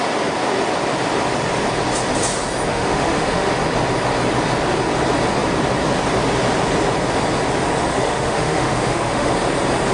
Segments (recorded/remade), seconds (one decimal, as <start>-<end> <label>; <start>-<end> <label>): 0.0-2.7 recorded; 2.7-3.5 remade; 3.5-7.9 recorded; 7.9-9.3 remade; 9.3-9.9 recorded